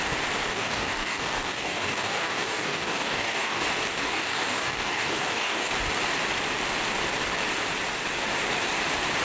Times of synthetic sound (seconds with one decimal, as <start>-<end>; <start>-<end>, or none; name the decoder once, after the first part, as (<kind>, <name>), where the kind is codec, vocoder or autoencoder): 0.5-3.6 (codec, DAC); 4.0-5.7